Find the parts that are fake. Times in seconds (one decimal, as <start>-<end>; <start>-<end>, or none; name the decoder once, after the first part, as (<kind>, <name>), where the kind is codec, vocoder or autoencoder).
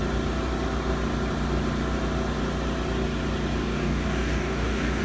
3.6-5.0 (codec, DAC)